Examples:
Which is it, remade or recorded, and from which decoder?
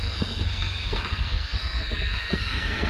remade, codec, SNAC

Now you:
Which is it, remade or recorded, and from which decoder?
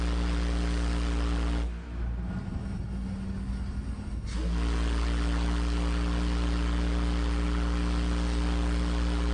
recorded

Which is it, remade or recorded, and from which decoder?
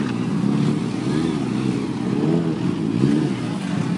recorded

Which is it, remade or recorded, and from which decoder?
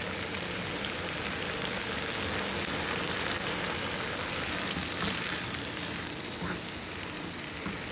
recorded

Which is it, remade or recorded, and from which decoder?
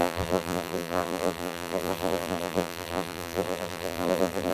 remade, vocoder, BigVGAN v2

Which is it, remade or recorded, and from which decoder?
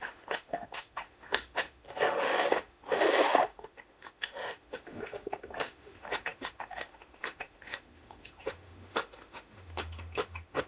remade, autoencoder, DAC-VAE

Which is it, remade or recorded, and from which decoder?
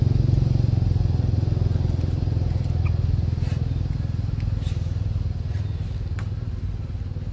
recorded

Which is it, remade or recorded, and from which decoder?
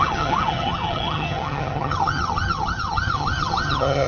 remade, vocoder, HiFi-GAN